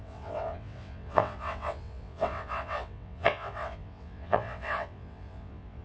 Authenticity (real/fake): fake